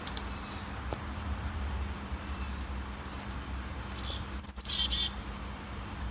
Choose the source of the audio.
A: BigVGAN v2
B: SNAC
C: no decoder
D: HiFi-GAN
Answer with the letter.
A